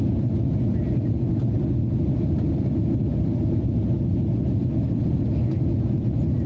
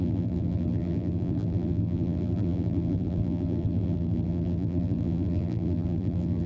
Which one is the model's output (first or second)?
second